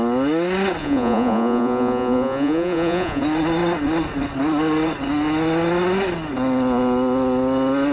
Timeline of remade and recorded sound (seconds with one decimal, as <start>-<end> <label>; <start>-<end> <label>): 0.0-0.8 recorded; 0.8-3.2 remade; 3.2-7.9 recorded